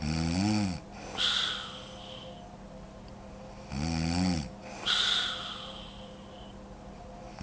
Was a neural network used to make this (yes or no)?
no